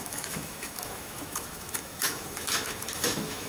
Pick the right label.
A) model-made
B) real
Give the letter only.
A